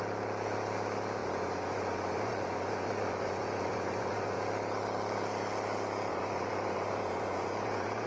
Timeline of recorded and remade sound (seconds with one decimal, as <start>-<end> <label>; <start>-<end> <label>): 0.0-1.2 recorded; 1.2-4.4 remade; 4.4-6.1 recorded; 6.1-8.1 remade